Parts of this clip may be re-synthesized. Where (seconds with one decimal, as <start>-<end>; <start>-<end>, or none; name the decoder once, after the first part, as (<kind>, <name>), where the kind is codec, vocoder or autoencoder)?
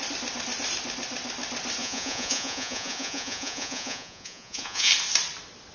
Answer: 1.8-4.9 (vocoder, Vocos)